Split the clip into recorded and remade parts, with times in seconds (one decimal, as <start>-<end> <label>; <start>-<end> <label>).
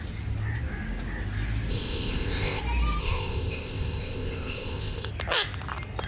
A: 0.0-1.7 recorded; 1.7-2.6 remade; 2.6-3.0 recorded; 3.0-5.1 remade; 5.1-6.1 recorded